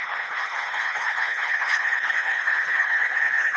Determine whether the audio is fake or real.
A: fake